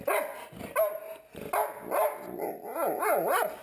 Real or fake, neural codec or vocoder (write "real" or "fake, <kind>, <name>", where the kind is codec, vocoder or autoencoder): real